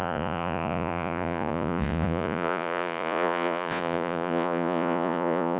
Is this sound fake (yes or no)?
yes